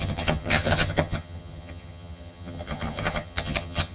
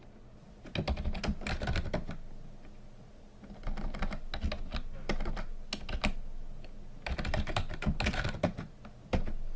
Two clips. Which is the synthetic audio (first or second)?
first